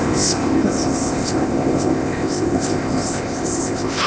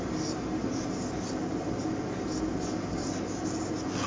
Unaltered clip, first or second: second